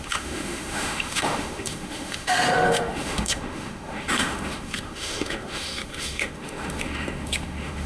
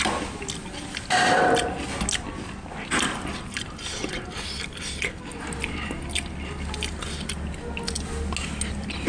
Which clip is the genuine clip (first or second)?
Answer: second